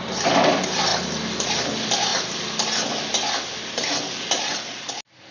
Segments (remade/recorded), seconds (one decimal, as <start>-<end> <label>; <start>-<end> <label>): 0.0-5.3 recorded